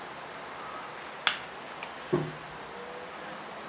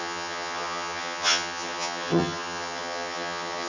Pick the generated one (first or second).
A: second